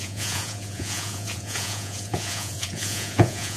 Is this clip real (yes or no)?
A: no